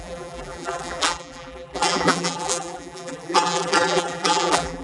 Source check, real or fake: fake